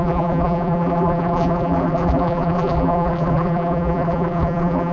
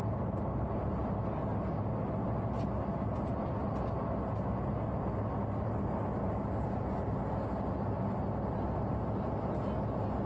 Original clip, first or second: second